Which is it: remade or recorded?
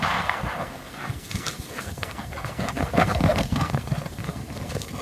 remade